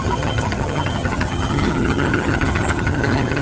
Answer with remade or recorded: remade